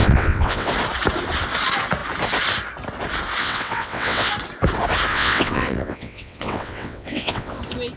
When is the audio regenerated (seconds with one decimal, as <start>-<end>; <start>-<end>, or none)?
0.0-0.7; 3.4-4.3; 5.1-7.6